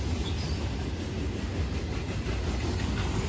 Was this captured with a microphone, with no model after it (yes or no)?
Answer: yes